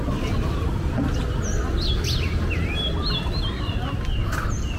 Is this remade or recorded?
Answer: recorded